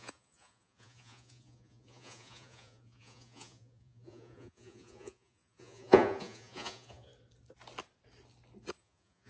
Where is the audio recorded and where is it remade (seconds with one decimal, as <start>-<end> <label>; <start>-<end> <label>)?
0.0-7.1 remade; 7.1-8.7 recorded; 8.7-9.3 remade